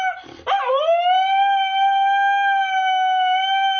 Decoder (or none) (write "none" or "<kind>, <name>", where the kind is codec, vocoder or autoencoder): none